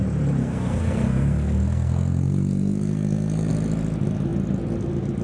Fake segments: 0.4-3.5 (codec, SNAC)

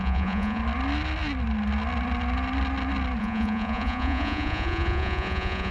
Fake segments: 0.0-0.6 (vocoder, Vocos); 3.2-5.7

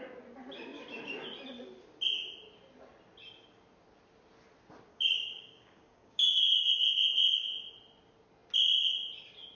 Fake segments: 4.9-6.6 (codec, DAC)

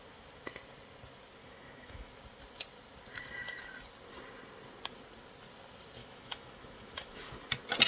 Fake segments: 1.4-2.1 (autoencoder, DAC-VAE); 6.0-7.3

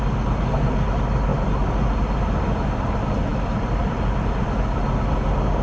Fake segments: none

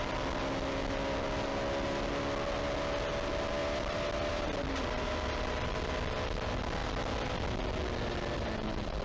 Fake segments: 3.6-5.7 (vocoder, BigVGAN v2)